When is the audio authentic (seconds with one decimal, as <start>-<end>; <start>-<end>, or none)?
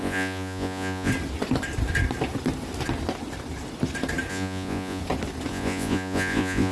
1.1-4.3; 5.0-5.5